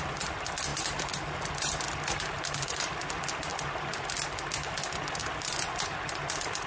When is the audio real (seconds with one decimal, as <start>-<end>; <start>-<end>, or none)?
0.0-6.7